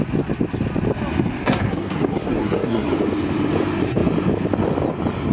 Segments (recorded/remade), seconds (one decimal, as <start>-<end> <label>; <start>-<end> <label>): 0.0-1.4 recorded; 1.4-2.9 remade; 2.9-5.3 recorded